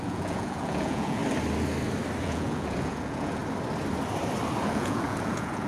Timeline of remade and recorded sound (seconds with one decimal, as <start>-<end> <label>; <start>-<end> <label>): 0.0-1.2 remade; 1.2-2.2 recorded; 2.2-3.4 remade; 3.4-4.7 recorded; 4.7-5.7 remade